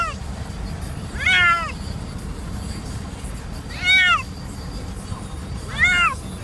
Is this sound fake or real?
real